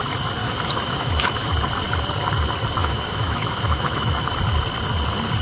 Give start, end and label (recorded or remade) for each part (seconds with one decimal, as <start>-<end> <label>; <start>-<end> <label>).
0.0-0.4 recorded; 0.4-1.5 remade; 1.5-2.8 recorded; 2.8-4.1 remade; 4.1-5.4 recorded